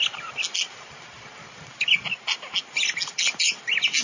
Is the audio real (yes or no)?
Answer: yes